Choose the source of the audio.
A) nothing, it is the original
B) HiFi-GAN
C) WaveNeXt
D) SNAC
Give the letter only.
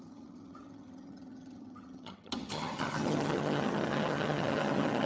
B